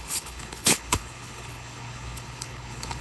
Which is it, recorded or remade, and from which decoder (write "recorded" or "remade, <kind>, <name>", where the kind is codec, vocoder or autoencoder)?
remade, codec, HILCodec